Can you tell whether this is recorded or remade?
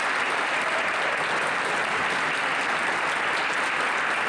recorded